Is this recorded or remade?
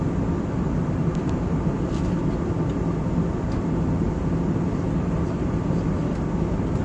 recorded